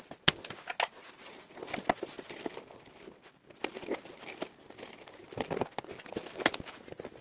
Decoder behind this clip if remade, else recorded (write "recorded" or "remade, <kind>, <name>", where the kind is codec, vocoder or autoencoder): recorded